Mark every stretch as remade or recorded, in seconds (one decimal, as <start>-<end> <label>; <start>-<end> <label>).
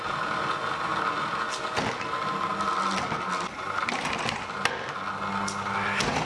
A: 0.0-6.2 recorded